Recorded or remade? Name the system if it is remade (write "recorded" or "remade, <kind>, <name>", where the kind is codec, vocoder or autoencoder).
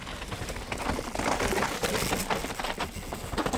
recorded